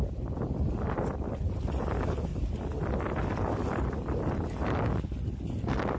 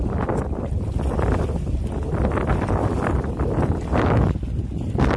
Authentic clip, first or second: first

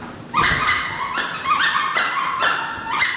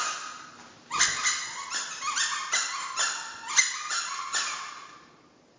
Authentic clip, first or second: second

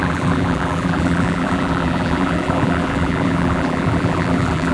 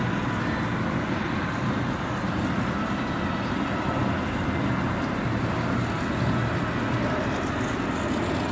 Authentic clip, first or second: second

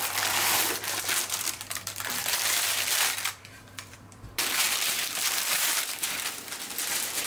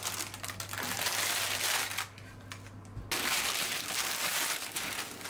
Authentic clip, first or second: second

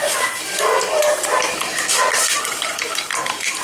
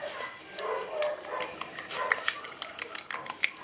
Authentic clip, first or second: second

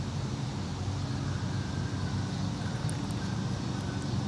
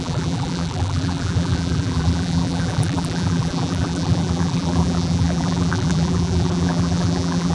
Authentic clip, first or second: first